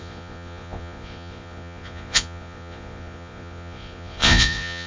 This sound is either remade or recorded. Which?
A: remade